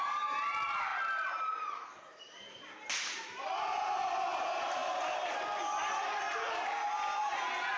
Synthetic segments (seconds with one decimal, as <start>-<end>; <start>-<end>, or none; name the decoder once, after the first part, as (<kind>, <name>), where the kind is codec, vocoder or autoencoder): none